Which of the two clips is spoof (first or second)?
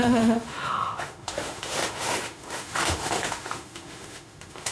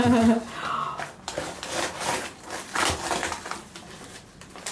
first